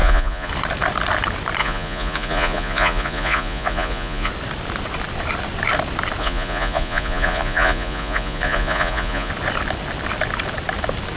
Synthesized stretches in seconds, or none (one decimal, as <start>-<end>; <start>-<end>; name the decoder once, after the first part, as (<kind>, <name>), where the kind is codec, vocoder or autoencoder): 0.0-0.5 (vocoder, Vocos); 1.6-4.3; 6.2-9.3